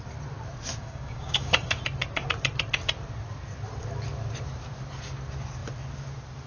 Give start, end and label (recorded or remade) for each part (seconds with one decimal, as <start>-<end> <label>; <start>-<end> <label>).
0.0-0.8 recorded; 0.8-1.8 remade; 1.8-6.5 recorded